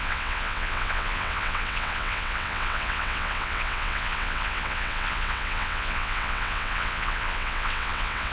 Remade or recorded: remade